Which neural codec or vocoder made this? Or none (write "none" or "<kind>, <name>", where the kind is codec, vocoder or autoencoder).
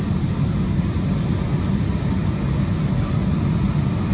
none